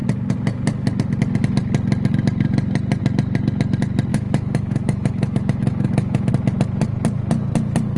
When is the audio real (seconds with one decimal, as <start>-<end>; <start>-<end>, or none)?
0.0-4.1; 6.3-8.0